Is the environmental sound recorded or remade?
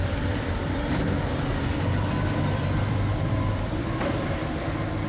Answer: remade